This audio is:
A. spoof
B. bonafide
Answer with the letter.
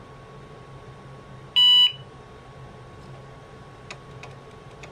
B